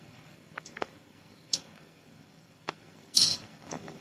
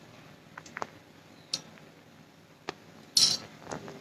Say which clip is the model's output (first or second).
first